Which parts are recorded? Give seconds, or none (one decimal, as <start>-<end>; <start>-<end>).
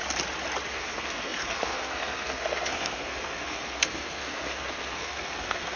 0.0-0.7